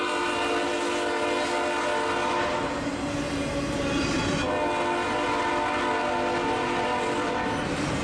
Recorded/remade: recorded